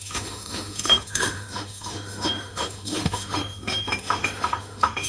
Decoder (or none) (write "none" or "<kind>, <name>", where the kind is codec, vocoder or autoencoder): autoencoder, DAC-VAE